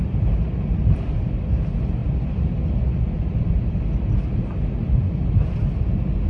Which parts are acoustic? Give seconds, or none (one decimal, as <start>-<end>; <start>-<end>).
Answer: 0.0-6.3